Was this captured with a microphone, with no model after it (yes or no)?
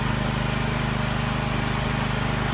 yes